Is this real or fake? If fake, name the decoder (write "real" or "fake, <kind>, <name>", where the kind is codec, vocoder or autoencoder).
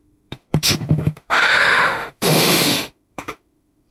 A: fake, autoencoder, DAC-VAE